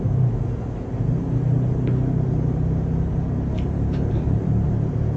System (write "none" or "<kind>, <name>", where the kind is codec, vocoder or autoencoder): none